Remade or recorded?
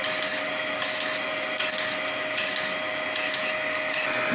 recorded